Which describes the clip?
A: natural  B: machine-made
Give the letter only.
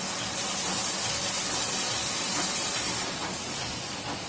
A